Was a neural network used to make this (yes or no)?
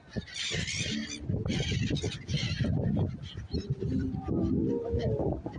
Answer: yes